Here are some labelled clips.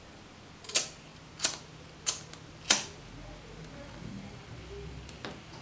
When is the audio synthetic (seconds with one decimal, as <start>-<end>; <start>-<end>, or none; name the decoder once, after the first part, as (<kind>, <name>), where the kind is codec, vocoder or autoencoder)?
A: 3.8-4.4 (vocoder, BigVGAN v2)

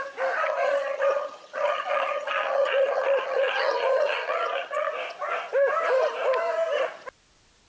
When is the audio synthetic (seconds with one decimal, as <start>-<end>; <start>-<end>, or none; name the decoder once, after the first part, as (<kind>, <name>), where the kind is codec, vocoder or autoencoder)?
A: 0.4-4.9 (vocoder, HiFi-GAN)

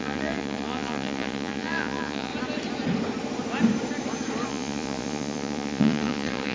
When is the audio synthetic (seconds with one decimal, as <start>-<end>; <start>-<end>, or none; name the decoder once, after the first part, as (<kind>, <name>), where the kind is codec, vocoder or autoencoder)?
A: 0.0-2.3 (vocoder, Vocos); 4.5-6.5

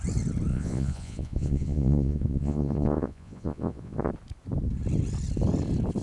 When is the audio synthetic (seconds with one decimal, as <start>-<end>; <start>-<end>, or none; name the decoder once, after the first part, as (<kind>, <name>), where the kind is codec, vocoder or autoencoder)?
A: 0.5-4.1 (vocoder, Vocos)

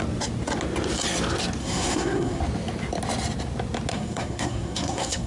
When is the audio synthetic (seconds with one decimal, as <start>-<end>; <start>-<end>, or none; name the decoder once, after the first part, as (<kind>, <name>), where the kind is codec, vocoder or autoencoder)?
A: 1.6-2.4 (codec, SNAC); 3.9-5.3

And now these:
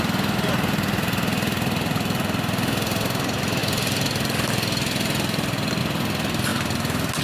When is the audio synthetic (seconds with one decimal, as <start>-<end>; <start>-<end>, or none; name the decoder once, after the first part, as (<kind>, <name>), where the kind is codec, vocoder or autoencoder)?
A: 3.6-5.8 (vocoder, BigVGAN v2)